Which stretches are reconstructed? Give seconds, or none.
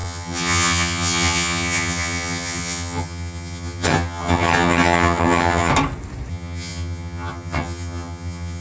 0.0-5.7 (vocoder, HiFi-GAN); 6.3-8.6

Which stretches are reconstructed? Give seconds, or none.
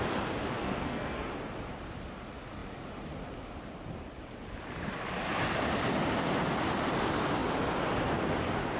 0.6-1.3 (codec, SNAC)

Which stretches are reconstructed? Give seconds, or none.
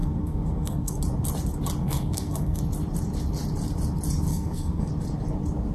0.0-1.0 (codec, SNAC); 1.8-2.6; 4.3-4.9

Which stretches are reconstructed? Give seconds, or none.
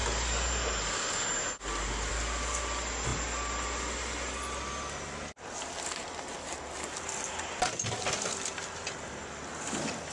none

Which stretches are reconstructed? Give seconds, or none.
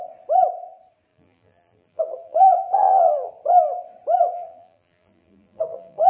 1.1-3.3 (vocoder, BigVGAN v2); 4.2-6.1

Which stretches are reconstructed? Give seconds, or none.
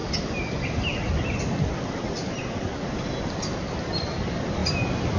none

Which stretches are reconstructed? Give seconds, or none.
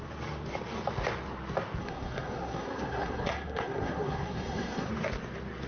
1.8-4.9 (codec, SNAC)